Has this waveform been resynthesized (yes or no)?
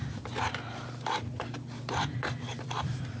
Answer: yes